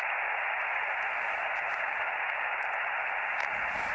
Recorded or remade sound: recorded